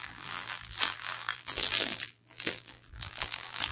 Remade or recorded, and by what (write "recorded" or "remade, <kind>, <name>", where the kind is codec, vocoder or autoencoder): remade, vocoder, BigVGAN v2